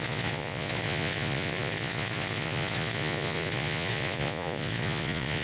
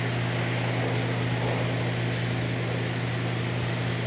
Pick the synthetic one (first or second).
first